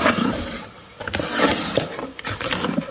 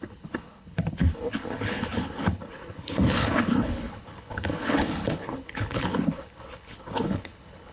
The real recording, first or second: first